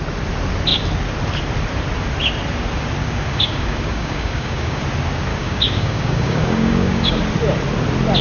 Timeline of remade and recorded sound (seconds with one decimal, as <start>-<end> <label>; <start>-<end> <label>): 0.0-3.0 recorded; 3.0-4.8 remade; 4.8-5.3 recorded; 5.3-7.2 remade; 7.2-8.2 recorded